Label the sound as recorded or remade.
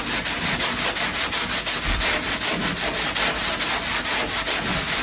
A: recorded